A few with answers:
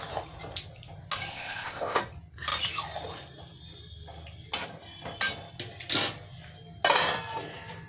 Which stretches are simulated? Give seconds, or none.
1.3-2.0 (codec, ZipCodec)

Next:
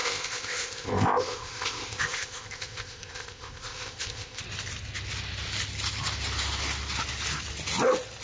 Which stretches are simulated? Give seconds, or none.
0.0-4.4 (codec, ZipCodec)

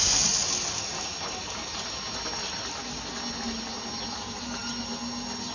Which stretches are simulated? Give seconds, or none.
none